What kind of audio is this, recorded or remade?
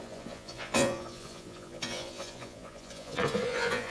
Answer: remade